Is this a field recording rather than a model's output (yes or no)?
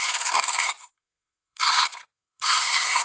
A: no